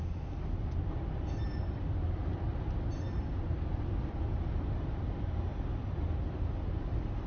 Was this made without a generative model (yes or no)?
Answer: yes